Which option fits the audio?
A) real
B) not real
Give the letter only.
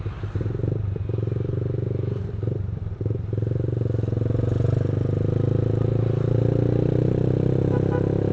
A